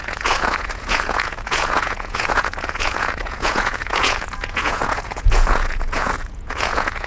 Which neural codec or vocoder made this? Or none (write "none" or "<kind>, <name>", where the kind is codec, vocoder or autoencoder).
vocoder, Vocos